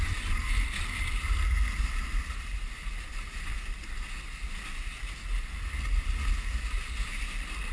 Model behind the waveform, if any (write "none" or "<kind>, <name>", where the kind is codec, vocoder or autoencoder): none